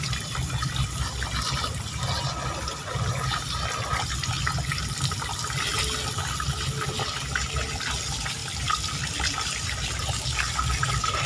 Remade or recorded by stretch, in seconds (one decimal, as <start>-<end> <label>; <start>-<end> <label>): 0.0-11.3 recorded